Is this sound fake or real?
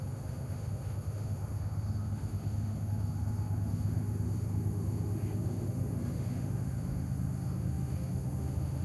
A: fake